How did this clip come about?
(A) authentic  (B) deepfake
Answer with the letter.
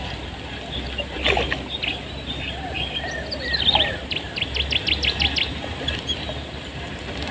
A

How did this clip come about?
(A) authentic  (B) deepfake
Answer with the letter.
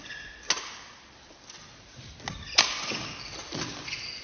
A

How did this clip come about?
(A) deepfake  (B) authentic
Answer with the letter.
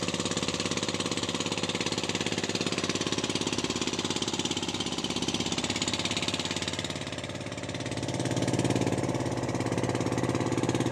B